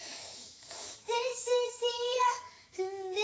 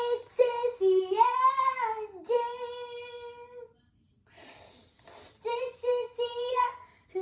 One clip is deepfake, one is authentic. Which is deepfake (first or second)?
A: first